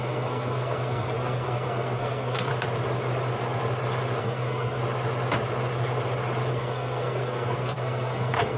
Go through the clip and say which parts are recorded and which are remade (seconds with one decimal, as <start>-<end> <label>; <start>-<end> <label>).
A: 0.0-2.5 remade; 2.5-4.2 recorded; 4.2-4.8 remade; 4.8-6.5 recorded; 6.5-8.6 remade